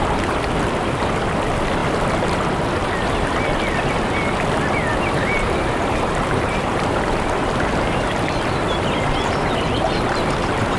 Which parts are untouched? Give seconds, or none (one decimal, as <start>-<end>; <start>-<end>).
0.0-4.9; 8.2-10.8